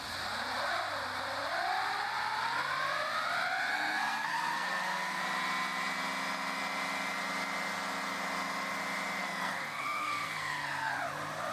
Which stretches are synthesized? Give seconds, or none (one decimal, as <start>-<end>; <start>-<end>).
3.7-5.2; 9.2-11.0

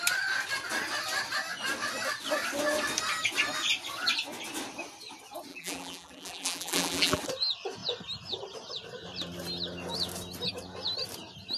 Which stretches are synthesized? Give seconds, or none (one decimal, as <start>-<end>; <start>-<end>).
5.5-7.2

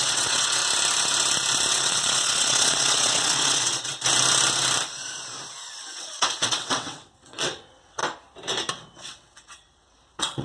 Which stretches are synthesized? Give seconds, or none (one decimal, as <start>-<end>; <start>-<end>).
0.0-0.6; 1.7-3.9; 5.8-8.0; 8.7-10.4

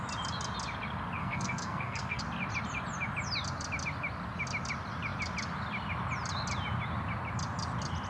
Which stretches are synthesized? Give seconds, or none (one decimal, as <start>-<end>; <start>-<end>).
1.2-2.2

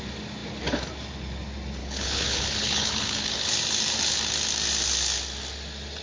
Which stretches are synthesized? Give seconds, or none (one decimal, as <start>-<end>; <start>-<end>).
1.8-3.5